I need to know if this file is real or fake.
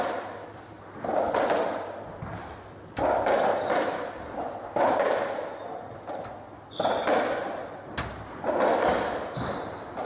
real